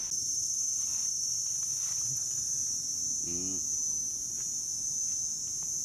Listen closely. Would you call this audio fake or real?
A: real